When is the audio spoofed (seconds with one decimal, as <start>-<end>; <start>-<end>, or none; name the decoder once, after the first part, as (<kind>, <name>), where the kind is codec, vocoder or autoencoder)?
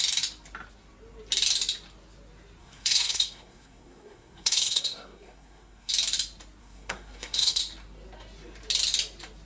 2.6-5.9 (codec, SNAC); 6.6-7.6